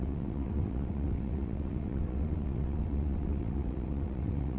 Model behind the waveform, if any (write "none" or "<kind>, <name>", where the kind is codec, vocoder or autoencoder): vocoder, WaveNeXt